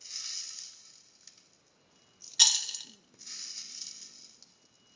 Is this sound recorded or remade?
recorded